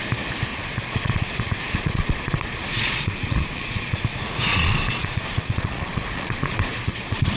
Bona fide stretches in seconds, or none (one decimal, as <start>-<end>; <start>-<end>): 0.0-0.5; 4.0-4.5